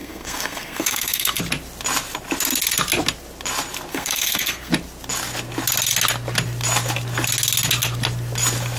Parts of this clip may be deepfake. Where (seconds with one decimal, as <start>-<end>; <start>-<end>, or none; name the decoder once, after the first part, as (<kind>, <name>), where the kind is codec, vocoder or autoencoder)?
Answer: 0.0-1.4 (codec, SNAC); 3.9-4.7